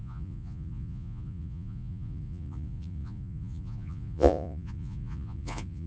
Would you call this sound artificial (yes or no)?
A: yes